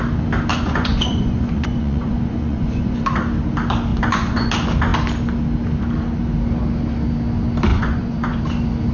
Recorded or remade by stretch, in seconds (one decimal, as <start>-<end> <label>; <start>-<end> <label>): 0.0-0.5 recorded; 0.5-3.0 remade; 3.0-3.9 recorded; 3.9-4.5 remade; 4.5-7.7 recorded; 7.7-8.4 remade; 8.4-8.9 recorded

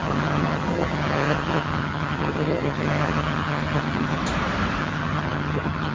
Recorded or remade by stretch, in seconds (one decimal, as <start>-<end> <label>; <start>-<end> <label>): 0.0-4.2 remade; 4.2-4.8 recorded; 4.8-5.9 remade

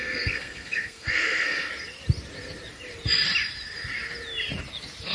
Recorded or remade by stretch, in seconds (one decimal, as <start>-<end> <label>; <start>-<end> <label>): 0.0-1.7 remade; 1.7-5.1 recorded